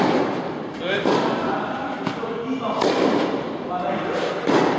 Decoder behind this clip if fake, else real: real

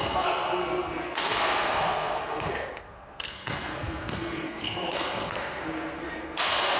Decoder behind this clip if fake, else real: fake, codec, SNAC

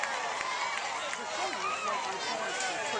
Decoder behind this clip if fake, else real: real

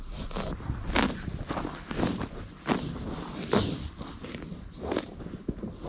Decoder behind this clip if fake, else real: real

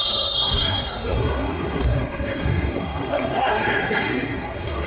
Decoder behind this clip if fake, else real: fake, codec, SNAC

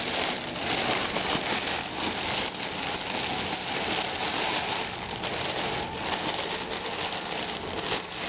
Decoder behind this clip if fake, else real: real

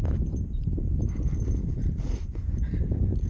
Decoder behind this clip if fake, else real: real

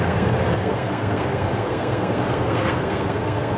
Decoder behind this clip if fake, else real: fake, codec, SNAC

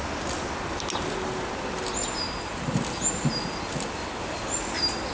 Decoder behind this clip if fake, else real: real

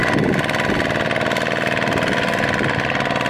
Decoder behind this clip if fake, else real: real